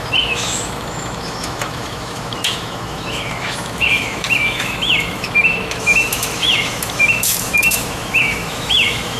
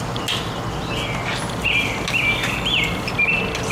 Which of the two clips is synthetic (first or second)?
first